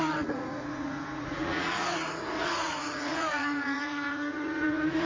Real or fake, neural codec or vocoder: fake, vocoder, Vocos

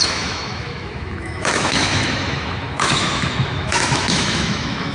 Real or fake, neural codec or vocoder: fake, autoencoder, DAC-VAE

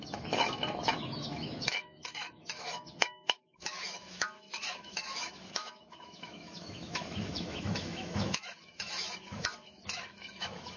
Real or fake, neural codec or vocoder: fake, autoencoder, DAC-VAE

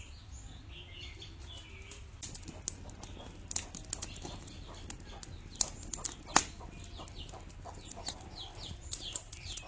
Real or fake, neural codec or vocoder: real